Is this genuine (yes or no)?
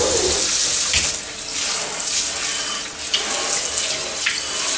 yes